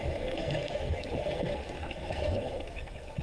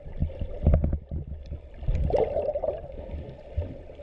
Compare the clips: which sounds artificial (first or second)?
first